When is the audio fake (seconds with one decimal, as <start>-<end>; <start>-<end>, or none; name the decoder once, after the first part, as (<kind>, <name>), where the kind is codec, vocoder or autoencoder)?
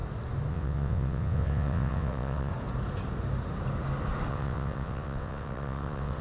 0.5-2.5 (vocoder, WaveNeXt); 4.3-6.2